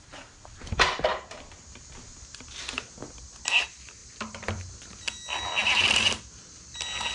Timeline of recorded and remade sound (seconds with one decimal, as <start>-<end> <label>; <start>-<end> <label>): 0.0-1.1 recorded; 1.1-2.6 remade; 2.6-4.0 recorded; 4.0-4.7 remade; 4.7-7.1 recorded